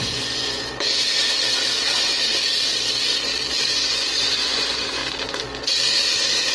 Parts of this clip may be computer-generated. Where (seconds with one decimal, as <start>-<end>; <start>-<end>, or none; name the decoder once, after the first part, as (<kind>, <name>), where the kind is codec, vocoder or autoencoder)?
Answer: 0.0-1.0 (vocoder, Vocos); 3.9-5.0